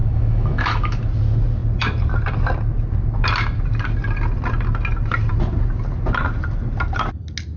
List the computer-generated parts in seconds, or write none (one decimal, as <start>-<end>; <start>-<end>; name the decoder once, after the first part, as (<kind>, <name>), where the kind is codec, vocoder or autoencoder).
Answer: 0.0-1.0 (autoencoder, DAC-VAE)